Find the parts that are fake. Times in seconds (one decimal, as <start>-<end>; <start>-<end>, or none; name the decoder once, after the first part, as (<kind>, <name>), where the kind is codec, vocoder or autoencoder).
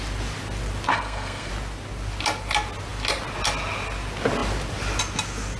0.9-1.5 (codec, SNAC)